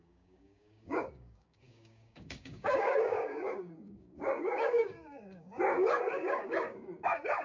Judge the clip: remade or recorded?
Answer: remade